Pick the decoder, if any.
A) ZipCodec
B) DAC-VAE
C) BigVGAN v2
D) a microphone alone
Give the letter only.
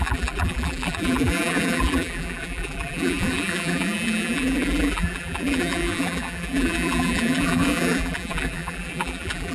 C